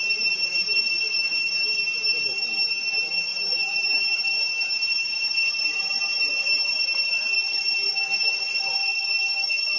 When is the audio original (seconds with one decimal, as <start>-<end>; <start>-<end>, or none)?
0.0-3.3; 4.2-9.8